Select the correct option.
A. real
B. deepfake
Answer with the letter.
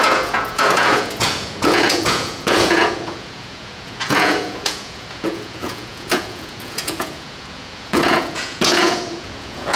B